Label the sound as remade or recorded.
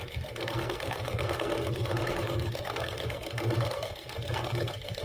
remade